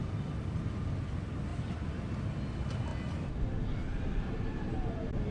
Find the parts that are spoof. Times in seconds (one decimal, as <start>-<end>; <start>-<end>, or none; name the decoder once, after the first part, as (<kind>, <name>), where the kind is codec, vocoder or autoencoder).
none